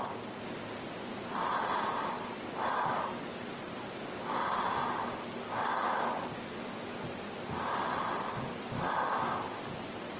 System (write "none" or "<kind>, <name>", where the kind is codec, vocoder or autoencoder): none